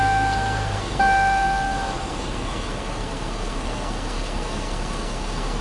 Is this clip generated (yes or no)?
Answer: yes